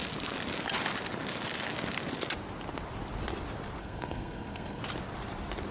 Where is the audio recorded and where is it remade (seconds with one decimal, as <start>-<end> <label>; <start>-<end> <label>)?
0.0-3.8 recorded; 3.8-4.8 remade; 4.8-5.7 recorded